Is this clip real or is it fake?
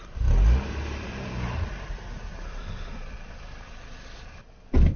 fake